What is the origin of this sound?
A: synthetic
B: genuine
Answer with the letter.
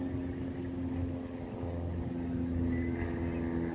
B